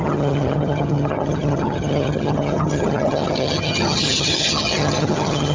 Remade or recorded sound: remade